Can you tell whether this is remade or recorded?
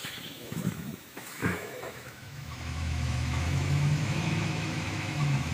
remade